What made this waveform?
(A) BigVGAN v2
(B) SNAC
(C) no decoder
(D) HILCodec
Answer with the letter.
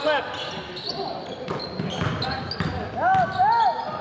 C